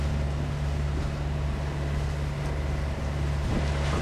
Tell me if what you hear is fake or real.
real